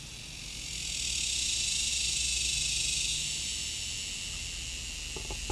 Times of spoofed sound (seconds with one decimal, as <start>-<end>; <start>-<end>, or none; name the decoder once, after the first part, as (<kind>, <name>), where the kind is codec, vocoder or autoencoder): none

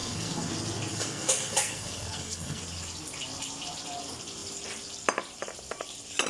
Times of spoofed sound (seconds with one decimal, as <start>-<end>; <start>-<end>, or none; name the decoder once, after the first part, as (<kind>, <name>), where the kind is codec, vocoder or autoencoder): 0.0-0.5 (codec, SNAC); 0.9-2.6